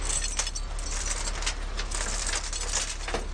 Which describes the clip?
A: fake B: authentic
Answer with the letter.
B